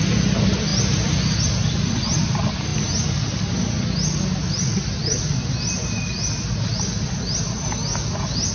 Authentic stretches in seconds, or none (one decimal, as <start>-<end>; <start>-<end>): 0.0-8.5